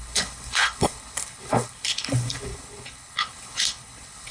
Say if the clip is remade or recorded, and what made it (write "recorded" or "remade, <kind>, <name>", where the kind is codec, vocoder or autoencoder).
remade, codec, HILCodec